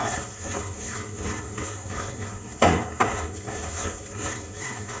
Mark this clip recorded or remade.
remade